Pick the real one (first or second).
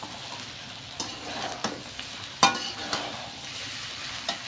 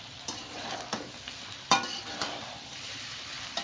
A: first